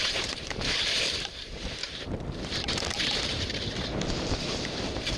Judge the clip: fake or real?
fake